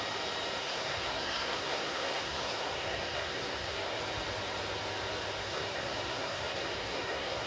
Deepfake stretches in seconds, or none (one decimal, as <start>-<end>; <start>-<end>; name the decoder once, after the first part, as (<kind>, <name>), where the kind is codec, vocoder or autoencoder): 0.6-4.0 (codec, SNAC); 5.4-7.5